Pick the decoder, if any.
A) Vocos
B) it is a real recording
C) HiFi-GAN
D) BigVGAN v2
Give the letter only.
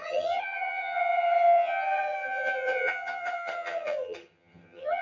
C